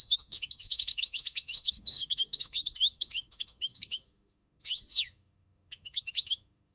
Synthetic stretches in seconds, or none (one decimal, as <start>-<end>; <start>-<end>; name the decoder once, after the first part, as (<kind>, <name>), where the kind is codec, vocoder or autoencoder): 0.0-6.7 (autoencoder, DAC-VAE)